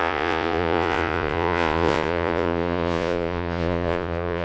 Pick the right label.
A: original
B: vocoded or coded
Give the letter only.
B